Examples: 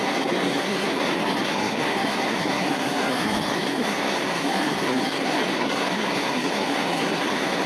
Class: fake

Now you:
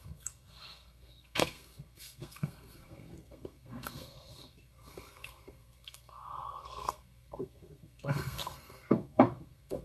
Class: fake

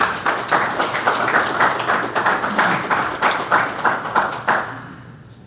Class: real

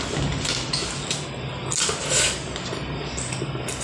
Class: real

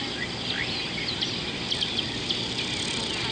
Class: real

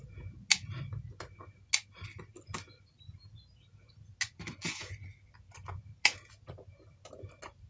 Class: real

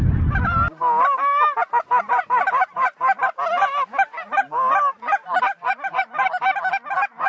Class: real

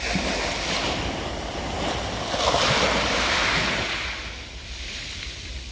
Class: real